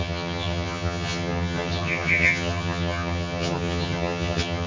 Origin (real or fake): fake